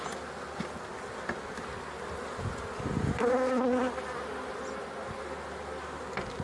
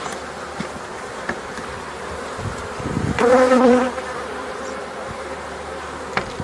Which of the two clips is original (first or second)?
first